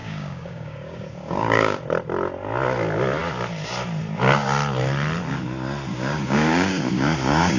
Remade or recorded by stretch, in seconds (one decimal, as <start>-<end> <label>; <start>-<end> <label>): 0.0-1.8 remade; 1.8-5.9 recorded; 5.9-7.6 remade